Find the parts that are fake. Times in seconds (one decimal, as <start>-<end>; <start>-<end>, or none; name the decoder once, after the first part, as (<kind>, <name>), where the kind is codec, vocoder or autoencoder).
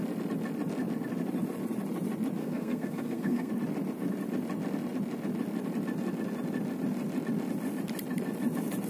2.4-3.5 (codec, SNAC)